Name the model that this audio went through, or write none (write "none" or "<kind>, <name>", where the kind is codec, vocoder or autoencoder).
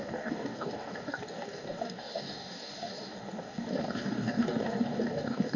codec, DAC